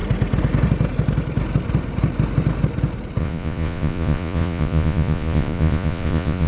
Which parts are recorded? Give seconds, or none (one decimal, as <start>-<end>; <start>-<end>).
0.0-3.2